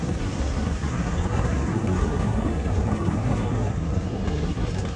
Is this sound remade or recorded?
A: remade